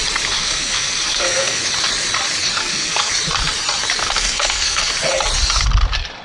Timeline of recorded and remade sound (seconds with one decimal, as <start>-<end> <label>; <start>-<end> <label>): 0.0-0.4 recorded; 0.4-1.6 remade; 1.6-2.6 recorded; 2.6-3.1 remade; 3.1-4.0 recorded; 4.0-4.9 remade; 4.9-6.2 recorded